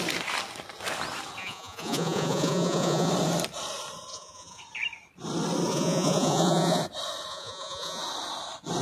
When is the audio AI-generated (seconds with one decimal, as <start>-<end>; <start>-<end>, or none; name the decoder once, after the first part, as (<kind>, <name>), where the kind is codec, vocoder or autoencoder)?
1.4-3.1 (vocoder, Vocos); 4.1-4.6; 5.7-6.8; 7.3-8.0